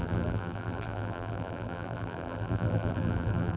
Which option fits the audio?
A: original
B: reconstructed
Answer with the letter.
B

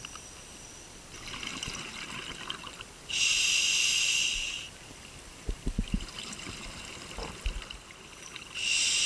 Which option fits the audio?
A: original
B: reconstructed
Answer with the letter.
A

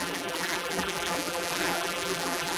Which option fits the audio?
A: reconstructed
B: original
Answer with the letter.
A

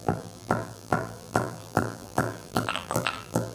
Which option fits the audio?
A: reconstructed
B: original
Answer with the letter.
A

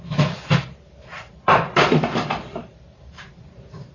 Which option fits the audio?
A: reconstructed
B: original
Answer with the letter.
A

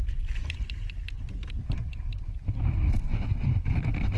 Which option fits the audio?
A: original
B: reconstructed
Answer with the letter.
B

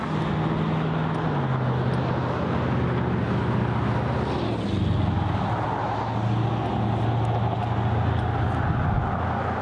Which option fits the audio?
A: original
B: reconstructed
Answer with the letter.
A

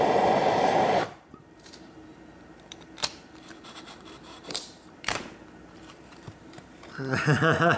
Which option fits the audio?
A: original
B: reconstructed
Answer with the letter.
B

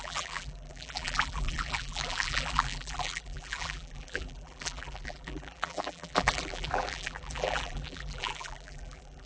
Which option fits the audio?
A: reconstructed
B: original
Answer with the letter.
A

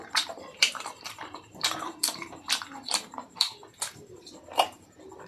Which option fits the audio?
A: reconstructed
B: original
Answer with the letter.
A